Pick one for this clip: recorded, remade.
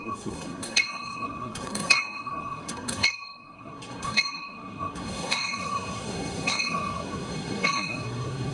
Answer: remade